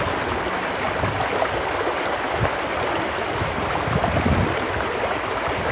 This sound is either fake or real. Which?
real